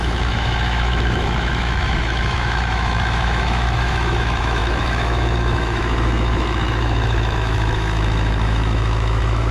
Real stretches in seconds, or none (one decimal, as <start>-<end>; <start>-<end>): none